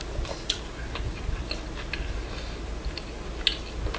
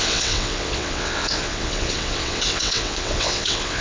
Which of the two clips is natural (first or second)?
first